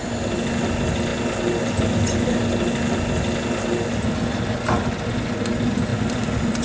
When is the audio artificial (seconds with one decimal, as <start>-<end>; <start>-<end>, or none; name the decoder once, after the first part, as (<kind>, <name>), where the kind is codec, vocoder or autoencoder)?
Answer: none